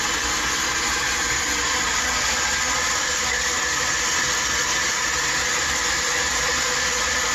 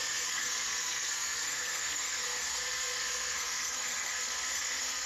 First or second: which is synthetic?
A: second